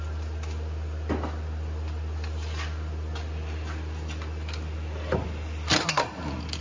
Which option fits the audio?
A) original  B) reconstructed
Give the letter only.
A